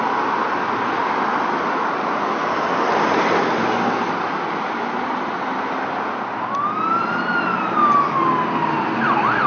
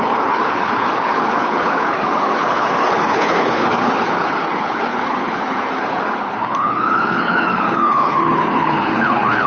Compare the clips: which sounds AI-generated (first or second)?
second